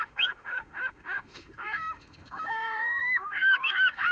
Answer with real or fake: fake